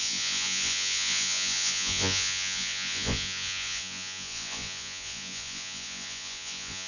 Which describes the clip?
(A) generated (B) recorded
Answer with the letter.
A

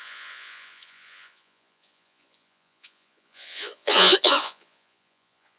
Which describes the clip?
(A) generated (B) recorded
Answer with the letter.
A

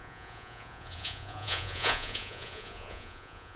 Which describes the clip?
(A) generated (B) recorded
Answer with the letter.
A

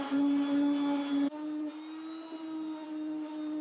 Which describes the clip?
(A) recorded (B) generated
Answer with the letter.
A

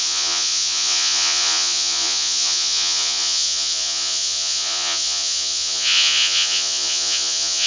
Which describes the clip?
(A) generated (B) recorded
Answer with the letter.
A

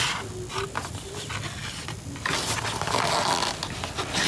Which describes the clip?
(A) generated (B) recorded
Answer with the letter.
B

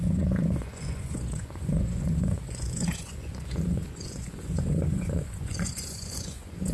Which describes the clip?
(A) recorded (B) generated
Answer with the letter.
B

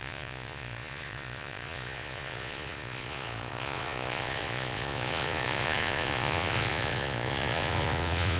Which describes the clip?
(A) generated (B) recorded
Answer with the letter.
A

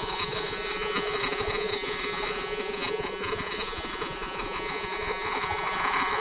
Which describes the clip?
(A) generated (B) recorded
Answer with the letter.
A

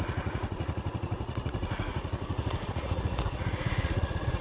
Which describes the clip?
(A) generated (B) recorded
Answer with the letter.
A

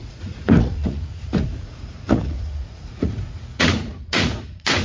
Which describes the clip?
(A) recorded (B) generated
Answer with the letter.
B